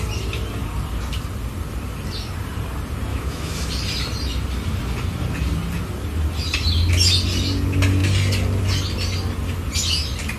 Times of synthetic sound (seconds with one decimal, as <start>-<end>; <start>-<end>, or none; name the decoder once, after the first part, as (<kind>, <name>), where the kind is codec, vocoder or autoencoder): 3.1-3.7 (autoencoder, DAC-VAE)